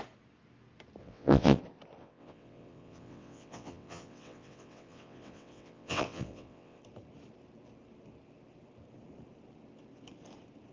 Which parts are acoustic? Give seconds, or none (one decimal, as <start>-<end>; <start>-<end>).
0.0-1.0; 1.6-2.0; 6.8-10.7